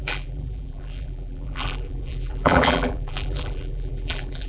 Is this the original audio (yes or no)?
no